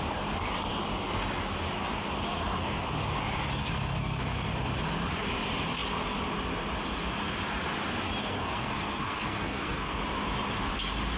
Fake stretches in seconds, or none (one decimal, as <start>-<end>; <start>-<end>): 3.6-4.5; 8.2-10.0

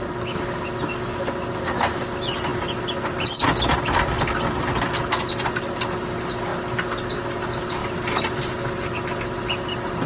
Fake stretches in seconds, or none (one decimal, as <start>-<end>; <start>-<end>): none

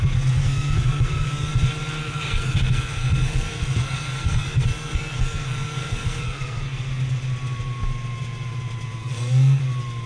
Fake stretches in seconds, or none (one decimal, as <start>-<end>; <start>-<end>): 0.4-1.5; 2.0-6.9; 9.0-9.6